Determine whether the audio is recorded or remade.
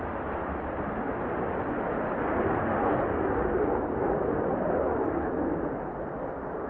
recorded